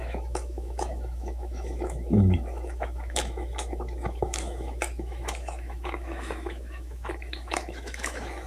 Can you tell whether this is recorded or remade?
remade